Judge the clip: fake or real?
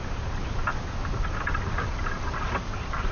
real